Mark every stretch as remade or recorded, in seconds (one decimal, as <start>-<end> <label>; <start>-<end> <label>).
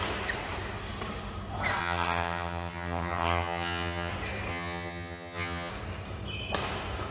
0.0-1.8 recorded; 1.8-4.1 remade; 4.1-4.5 recorded; 4.5-5.7 remade; 5.7-7.1 recorded